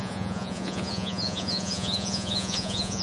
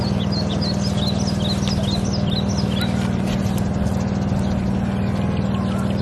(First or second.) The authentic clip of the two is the second